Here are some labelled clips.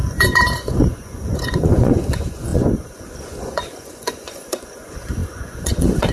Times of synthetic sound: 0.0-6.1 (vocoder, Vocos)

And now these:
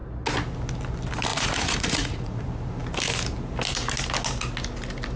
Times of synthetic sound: 1.3-2.4 (vocoder, Vocos)

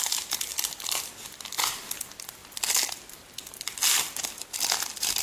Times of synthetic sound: none